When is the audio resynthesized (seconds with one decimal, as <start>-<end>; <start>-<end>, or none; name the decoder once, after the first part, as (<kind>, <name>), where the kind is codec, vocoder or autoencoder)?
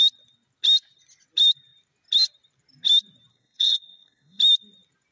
3.3-4.4 (codec, SNAC)